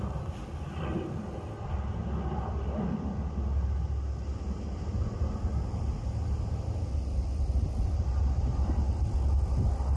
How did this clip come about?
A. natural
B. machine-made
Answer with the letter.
A